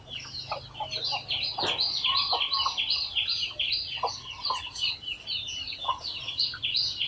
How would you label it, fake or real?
real